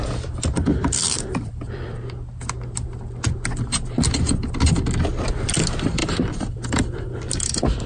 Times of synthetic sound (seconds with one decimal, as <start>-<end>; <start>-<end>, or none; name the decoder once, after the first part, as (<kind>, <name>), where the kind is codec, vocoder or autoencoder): 0.7-2.0 (vocoder, BigVGAN v2); 6.0-7.3